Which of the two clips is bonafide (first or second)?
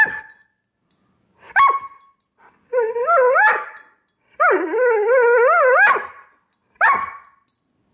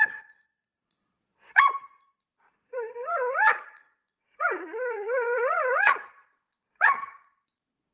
first